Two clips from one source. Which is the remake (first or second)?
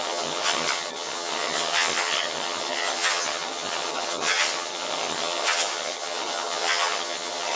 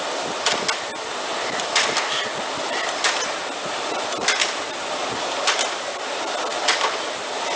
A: first